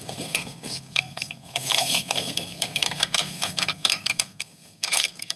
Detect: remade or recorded remade